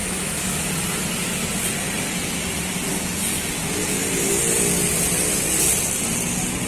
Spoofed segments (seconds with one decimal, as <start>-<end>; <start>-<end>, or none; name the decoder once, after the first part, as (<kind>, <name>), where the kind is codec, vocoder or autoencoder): 0.0-0.7 (autoencoder, DAC-VAE)